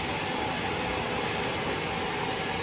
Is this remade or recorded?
recorded